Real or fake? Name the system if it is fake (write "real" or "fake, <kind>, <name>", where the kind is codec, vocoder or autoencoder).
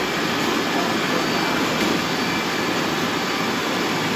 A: real